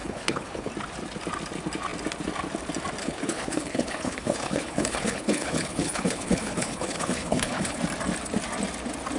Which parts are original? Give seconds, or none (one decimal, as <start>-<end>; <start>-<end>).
0.7-3.0; 7.8-9.2